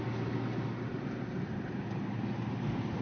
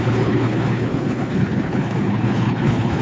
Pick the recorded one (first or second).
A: first